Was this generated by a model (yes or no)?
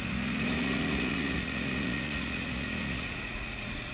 yes